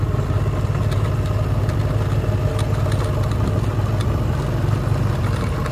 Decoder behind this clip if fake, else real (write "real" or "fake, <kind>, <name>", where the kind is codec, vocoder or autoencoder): real